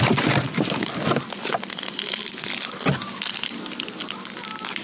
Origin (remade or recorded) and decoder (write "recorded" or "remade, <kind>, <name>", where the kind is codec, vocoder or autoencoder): remade, vocoder, BigVGAN v2